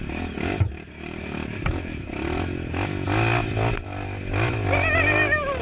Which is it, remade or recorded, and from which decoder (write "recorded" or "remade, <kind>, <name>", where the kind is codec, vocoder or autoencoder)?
recorded